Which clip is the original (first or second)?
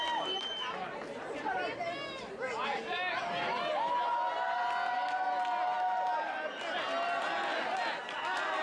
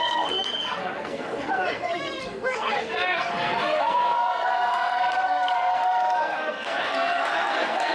first